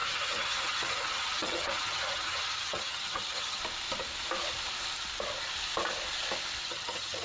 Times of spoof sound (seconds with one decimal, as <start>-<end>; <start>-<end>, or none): 0.0-3.6; 6.6-7.2